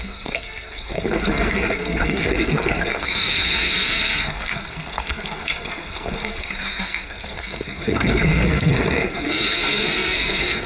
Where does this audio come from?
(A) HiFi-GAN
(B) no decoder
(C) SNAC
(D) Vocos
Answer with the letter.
C